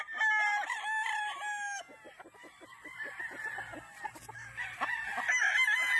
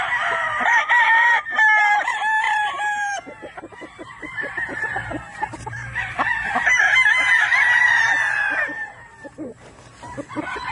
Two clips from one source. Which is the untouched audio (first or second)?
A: first